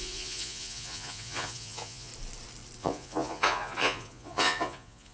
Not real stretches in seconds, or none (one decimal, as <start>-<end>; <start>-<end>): 0.0-2.1; 2.8-5.1